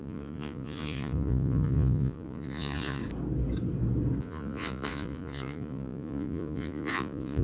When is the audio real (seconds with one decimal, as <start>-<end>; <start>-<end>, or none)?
3.0-4.2